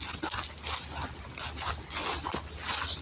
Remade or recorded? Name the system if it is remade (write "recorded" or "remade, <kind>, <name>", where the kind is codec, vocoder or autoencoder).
recorded